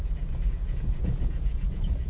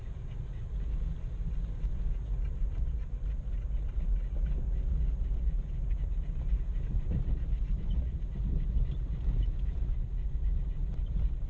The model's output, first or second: first